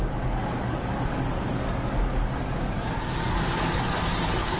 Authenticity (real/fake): fake